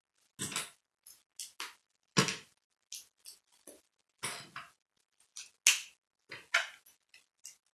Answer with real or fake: real